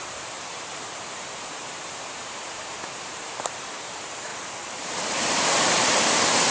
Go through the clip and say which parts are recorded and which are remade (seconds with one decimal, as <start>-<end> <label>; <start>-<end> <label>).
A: 0.0-4.3 remade; 4.3-5.4 recorded; 5.4-6.5 remade